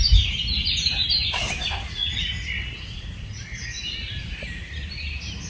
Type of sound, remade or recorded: recorded